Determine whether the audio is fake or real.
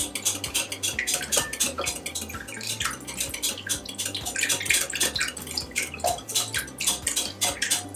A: real